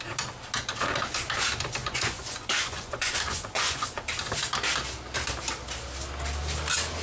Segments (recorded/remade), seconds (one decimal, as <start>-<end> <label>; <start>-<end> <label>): 0.0-1.8 recorded; 1.8-4.0 remade; 4.0-7.0 recorded